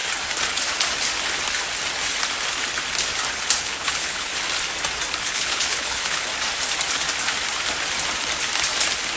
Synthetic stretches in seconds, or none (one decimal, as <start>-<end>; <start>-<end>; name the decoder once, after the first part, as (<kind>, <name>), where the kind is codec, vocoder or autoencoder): 3.6-4.3 (codec, HILCodec); 5.2-6.3